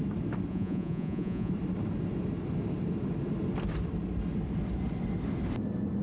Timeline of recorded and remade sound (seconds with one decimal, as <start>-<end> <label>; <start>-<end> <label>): 0.0-0.5 recorded; 0.5-1.5 remade; 1.5-6.0 recorded